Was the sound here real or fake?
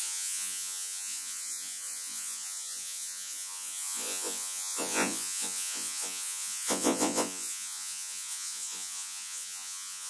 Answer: fake